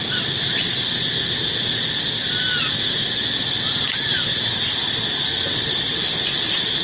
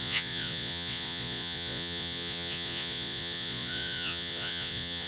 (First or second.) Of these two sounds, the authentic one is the first